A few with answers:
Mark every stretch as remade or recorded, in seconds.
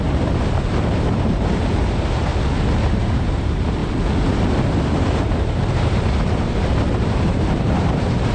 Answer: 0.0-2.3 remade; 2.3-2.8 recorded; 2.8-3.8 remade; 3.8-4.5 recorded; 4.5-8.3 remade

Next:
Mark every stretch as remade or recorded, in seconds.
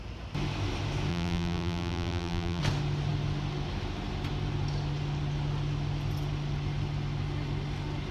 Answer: 0.0-1.1 recorded; 1.1-2.6 remade; 2.6-8.1 recorded